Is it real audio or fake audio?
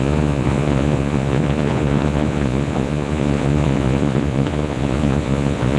fake